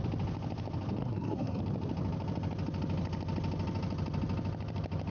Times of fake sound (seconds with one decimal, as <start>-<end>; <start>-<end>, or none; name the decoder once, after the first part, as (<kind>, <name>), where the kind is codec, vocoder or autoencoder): 1.0-1.6 (codec, SNAC)